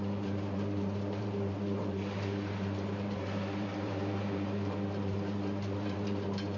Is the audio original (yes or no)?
no